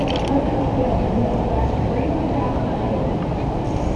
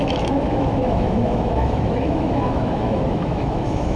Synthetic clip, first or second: second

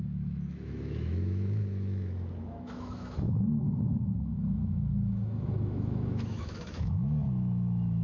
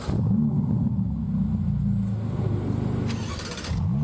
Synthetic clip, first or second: first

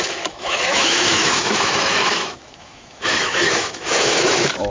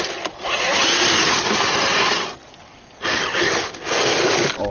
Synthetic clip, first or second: first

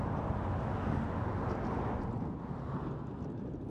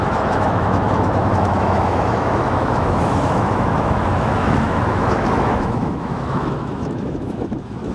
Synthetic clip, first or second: second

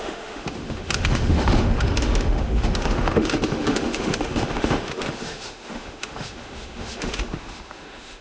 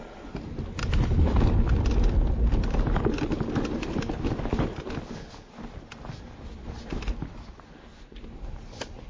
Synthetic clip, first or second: first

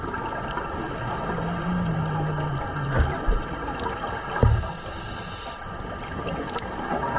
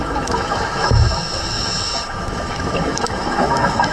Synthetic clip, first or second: second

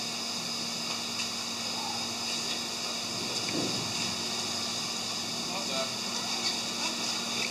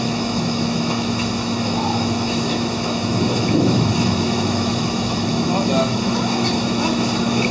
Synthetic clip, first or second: second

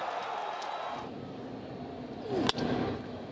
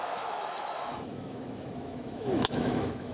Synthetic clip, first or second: second